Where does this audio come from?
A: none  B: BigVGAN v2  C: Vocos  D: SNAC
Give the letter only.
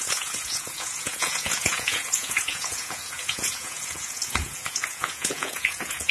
C